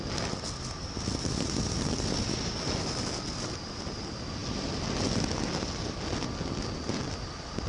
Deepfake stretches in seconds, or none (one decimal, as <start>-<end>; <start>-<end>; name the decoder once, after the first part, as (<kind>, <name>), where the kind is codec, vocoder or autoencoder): none